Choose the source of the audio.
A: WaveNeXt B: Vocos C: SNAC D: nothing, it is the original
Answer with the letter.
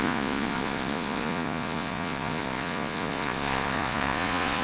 B